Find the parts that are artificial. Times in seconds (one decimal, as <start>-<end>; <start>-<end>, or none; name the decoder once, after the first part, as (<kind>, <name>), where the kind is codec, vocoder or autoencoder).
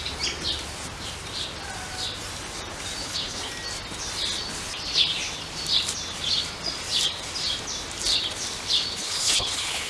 3.0-3.5 (codec, HILCodec); 9.0-9.9